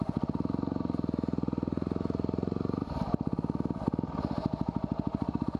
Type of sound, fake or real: real